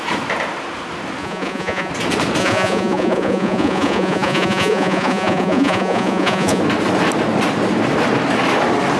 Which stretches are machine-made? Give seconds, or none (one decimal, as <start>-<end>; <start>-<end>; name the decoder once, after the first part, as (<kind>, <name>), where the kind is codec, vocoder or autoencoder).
1.2-1.9 (vocoder, Vocos); 2.4-6.6